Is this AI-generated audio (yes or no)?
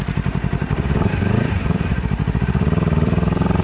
yes